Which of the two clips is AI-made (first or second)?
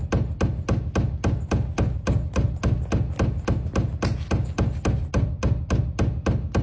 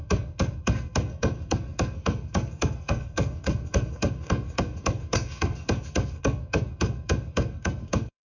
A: second